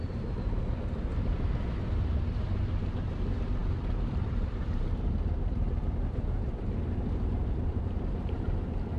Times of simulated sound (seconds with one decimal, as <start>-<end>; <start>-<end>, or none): 0.0-9.0

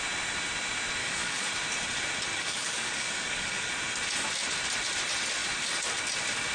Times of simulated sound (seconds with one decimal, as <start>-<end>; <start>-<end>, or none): 1.0-1.5; 2.3-3.7

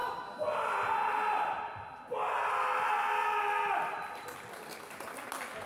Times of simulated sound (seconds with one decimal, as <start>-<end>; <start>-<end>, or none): none

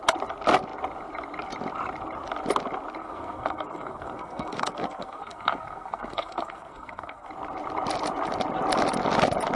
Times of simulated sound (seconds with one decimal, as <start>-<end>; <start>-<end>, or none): 3.0-7.3

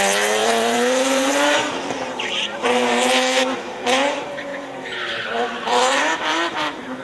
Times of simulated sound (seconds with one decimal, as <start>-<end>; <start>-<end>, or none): 0.0-7.0

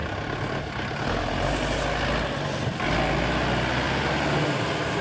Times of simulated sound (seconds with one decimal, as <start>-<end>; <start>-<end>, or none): none